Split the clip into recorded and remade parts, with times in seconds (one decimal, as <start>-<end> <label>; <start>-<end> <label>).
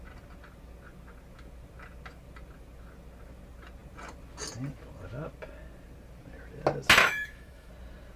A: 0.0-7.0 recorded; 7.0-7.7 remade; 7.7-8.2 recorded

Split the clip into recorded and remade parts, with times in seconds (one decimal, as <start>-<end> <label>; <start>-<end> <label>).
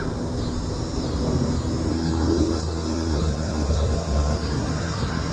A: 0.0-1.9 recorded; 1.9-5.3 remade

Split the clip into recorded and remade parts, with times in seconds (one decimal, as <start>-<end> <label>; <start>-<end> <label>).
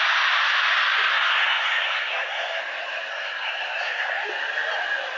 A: 0.0-1.1 recorded; 1.1-2.6 remade; 2.6-3.1 recorded; 3.1-4.3 remade; 4.3-5.2 recorded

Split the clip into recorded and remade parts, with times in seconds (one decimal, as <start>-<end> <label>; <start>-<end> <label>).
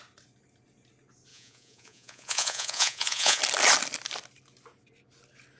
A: 0.0-1.3 recorded; 1.3-3.4 remade; 3.4-5.6 recorded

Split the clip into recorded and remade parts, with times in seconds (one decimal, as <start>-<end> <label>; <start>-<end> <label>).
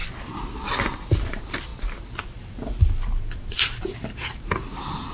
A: 0.0-1.2 recorded; 1.2-5.1 remade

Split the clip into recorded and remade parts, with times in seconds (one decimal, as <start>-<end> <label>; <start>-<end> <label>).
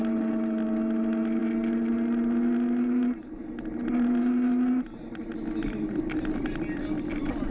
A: 0.0-7.5 recorded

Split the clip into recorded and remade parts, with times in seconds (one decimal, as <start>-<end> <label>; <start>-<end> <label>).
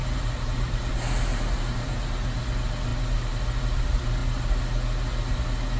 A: 0.0-0.9 remade; 0.9-1.3 recorded; 1.3-1.9 remade; 1.9-5.8 recorded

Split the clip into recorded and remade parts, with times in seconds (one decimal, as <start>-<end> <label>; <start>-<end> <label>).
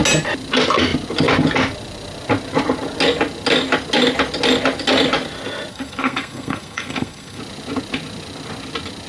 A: 0.0-5.7 recorded; 5.7-7.4 remade; 7.4-9.1 recorded